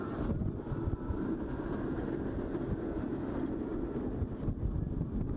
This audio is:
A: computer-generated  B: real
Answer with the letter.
B